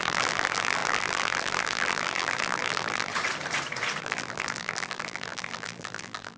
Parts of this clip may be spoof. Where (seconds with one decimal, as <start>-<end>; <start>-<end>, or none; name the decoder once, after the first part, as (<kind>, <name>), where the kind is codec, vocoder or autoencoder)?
0.0-3.1 (vocoder, BigVGAN v2); 4.0-6.4